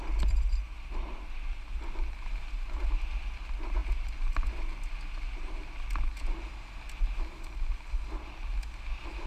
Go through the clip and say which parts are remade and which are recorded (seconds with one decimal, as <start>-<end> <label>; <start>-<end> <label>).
0.0-9.3 recorded

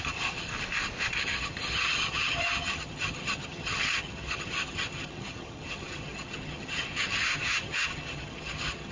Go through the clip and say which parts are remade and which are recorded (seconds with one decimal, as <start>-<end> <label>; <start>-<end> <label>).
0.0-0.5 remade; 0.5-1.1 recorded; 1.1-8.9 remade

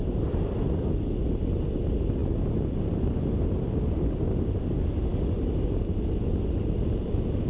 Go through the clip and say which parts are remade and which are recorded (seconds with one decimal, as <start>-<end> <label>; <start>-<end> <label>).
0.0-7.5 recorded

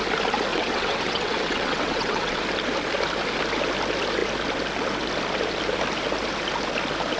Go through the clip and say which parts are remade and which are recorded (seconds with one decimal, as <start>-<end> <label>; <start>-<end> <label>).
0.0-0.5 recorded; 0.5-2.4 remade; 2.4-7.2 recorded